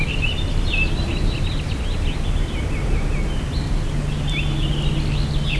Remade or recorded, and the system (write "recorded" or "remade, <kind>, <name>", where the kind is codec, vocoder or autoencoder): recorded